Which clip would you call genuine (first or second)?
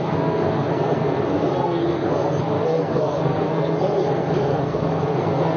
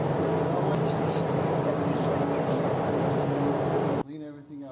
second